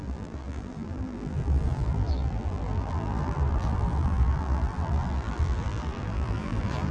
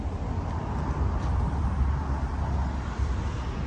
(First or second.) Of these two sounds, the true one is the second